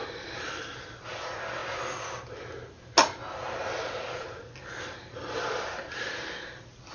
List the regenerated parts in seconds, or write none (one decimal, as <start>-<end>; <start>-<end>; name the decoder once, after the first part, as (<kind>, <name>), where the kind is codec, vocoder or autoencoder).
0.0-1.6 (vocoder, BigVGAN v2); 4.8-6.9